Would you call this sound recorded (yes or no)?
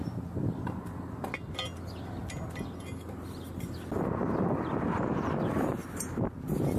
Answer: yes